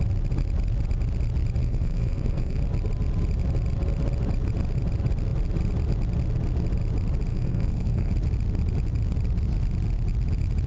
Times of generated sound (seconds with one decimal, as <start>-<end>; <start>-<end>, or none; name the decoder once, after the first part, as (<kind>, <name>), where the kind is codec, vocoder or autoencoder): 1.6-2.6 (codec, SNAC); 7.3-8.1